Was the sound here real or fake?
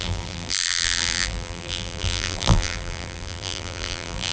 fake